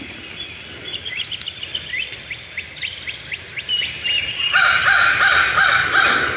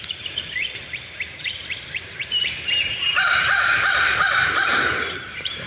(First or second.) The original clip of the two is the first